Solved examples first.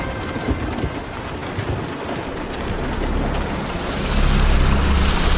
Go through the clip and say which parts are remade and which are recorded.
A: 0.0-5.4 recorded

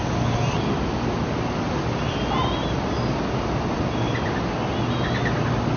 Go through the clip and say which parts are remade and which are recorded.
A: 0.0-5.8 recorded

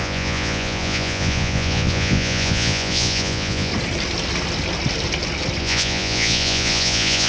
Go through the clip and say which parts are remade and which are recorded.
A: 0.0-3.7 remade; 3.7-5.6 recorded; 5.6-7.3 remade

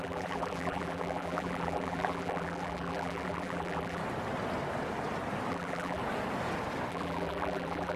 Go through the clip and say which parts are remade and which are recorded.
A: 0.0-4.0 remade; 4.0-5.5 recorded; 5.5-6.0 remade; 6.0-6.9 recorded; 6.9-8.0 remade

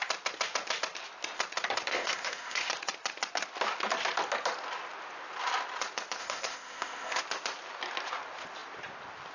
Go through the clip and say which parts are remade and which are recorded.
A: 0.0-1.9 recorded; 1.9-2.7 remade; 2.7-6.2 recorded; 6.2-7.2 remade; 7.2-9.3 recorded

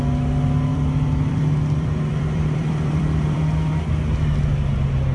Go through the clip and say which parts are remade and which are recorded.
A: 0.0-0.7 recorded; 0.7-3.8 remade; 3.8-5.1 recorded

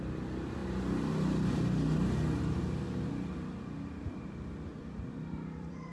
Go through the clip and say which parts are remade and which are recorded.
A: 0.0-4.7 recorded; 4.7-5.9 remade